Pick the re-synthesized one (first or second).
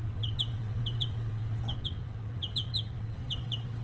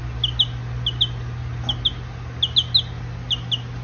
first